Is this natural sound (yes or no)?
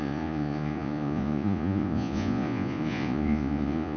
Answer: no